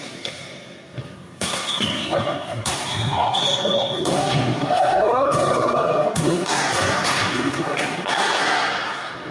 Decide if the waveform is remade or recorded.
remade